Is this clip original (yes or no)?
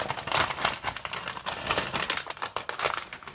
yes